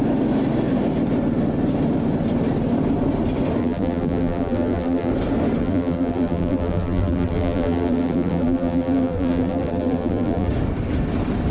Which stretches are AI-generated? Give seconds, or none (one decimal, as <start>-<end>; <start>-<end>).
3.6-5.1; 5.6-10.5